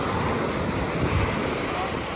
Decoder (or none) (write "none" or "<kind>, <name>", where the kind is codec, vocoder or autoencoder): none